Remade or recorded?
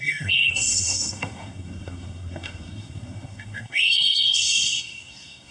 remade